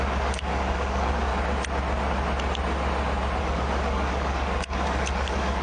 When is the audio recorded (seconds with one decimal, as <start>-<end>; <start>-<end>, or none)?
1.3-3.4